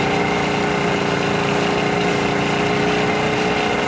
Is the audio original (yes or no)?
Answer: yes